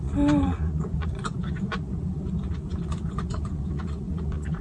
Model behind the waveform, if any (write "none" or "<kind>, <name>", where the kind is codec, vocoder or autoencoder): vocoder, Vocos